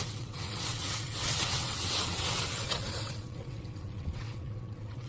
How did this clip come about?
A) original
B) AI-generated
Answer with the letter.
B